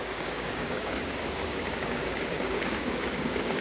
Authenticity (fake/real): fake